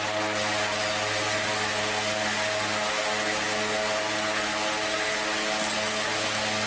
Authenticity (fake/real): real